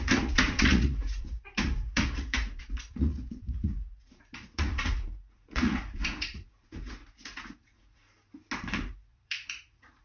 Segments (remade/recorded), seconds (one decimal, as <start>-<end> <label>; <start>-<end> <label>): 0.0-8.0 remade; 8.0-8.9 recorded; 8.9-10.0 remade